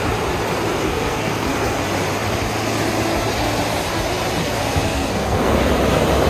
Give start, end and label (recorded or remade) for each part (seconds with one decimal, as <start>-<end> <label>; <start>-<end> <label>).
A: 0.0-0.8 recorded; 0.8-1.8 remade; 1.8-4.4 recorded; 4.4-5.7 remade; 5.7-6.3 recorded